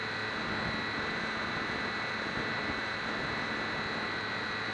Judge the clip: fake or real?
real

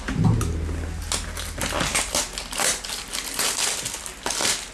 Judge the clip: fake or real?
real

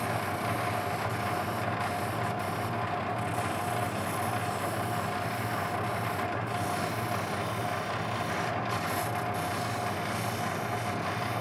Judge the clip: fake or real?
real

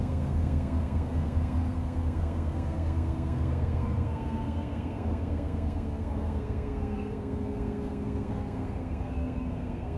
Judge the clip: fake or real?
fake